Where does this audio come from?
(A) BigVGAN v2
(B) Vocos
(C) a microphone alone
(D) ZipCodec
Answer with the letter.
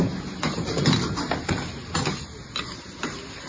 C